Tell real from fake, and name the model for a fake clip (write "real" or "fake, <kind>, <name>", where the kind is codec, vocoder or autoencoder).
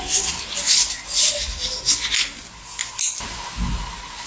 real